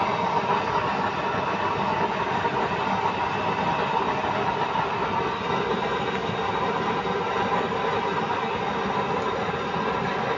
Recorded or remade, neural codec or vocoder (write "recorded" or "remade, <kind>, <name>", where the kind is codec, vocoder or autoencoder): recorded